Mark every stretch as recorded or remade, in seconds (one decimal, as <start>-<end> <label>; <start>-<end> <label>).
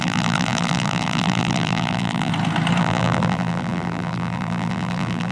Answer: 0.0-2.3 remade; 2.3-2.8 recorded; 2.8-5.3 remade